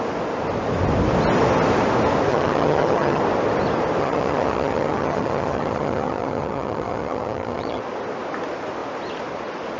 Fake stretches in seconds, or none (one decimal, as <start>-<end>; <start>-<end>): 2.3-3.2; 4.0-7.8

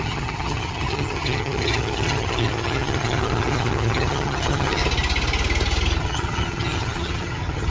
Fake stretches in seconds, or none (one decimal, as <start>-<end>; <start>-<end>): 0.0-4.8; 6.0-7.7

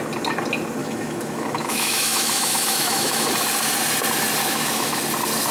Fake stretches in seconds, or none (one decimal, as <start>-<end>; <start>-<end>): 0.8-3.3; 4.4-5.0

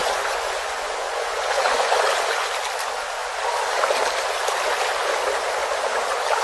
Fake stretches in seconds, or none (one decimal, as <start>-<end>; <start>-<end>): 0.0-2.5

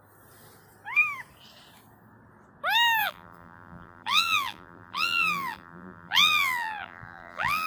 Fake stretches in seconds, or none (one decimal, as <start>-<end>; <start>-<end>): 3.0-7.7

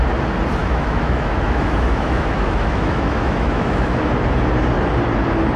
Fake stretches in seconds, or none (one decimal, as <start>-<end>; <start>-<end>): 0.6-4.0